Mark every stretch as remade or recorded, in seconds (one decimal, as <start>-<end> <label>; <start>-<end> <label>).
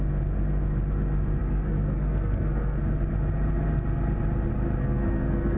0.0-1.4 recorded; 1.4-2.8 remade; 2.8-4.8 recorded; 4.8-5.6 remade